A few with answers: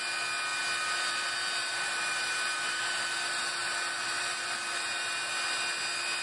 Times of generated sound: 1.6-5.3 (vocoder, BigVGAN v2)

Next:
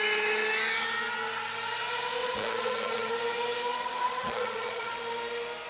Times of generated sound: 2.2-3.1 (vocoder, Vocos); 3.7-5.0

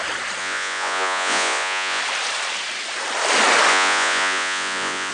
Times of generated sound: 0.4-2.0 (vocoder, Vocos); 3.7-5.1

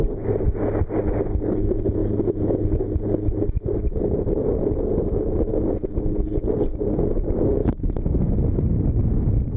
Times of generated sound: none

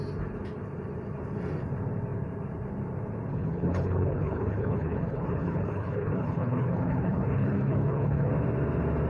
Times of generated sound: 3.3-8.3 (codec, HILCodec)

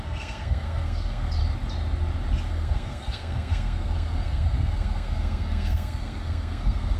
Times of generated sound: 0.0-1.4 (codec, SNAC); 2.5-7.0

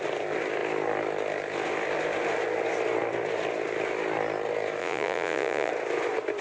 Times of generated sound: 4.8-5.7 (vocoder, Vocos)